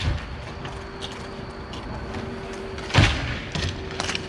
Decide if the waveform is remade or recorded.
recorded